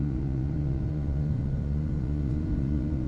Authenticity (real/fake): fake